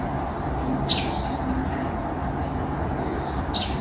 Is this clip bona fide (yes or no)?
yes